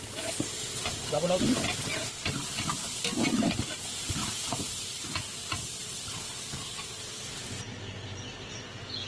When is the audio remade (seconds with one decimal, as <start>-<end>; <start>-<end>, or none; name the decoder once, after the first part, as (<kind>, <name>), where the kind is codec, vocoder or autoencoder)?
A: none